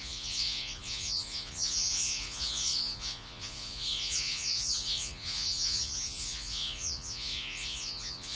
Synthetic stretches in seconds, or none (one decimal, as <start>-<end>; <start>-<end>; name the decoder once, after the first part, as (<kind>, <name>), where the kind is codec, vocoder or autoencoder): 0.0-8.3 (vocoder, Vocos)